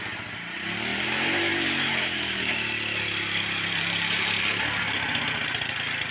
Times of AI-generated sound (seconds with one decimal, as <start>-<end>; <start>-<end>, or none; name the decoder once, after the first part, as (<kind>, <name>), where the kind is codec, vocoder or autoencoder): 0.9-4.6 (vocoder, BigVGAN v2)